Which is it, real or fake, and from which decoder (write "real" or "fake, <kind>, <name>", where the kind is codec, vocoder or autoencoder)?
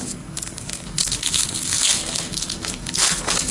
fake, codec, SNAC